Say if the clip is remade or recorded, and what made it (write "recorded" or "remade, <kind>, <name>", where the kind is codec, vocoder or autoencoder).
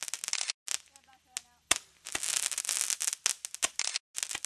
recorded